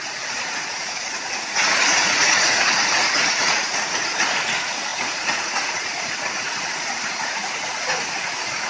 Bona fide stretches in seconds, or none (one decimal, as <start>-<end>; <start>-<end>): none